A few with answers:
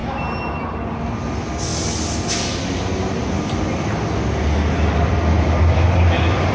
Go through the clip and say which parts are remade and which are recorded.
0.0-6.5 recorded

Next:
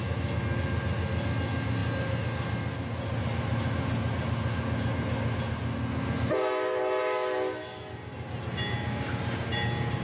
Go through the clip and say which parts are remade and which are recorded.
0.0-10.0 recorded

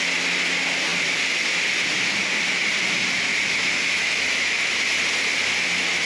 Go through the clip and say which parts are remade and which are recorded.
0.0-3.3 recorded; 3.3-4.7 remade; 4.7-6.1 recorded